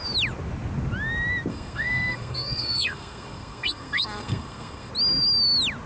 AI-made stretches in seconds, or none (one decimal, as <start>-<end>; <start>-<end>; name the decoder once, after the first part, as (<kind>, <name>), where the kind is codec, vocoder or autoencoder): 1.5-4.9 (codec, SNAC)